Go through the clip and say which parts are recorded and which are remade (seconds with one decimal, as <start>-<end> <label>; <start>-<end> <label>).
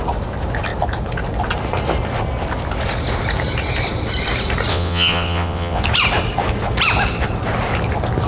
0.0-4.7 recorded; 4.7-5.8 remade; 5.8-8.3 recorded